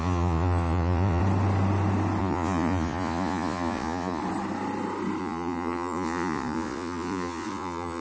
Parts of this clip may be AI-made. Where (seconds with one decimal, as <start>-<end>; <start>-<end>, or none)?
0.0-1.2; 2.2-4.2; 5.2-8.0